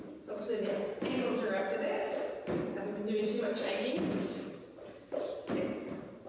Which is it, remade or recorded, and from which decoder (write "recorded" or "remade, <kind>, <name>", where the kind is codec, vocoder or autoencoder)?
recorded